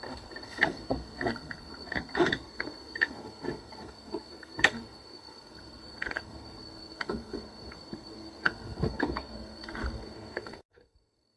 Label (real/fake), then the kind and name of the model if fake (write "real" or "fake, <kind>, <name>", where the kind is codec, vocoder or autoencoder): fake, codec, SNAC